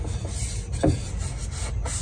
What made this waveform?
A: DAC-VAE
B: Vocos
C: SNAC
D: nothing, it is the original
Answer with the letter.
D